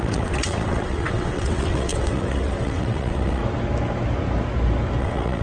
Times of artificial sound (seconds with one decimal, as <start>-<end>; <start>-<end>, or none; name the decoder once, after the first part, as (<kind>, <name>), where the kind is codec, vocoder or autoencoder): 0.0-3.4 (vocoder, WaveNeXt); 5.0-5.4